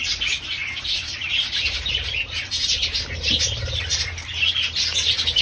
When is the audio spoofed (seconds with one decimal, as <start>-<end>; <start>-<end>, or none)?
0.6-3.8